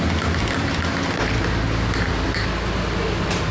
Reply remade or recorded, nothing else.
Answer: recorded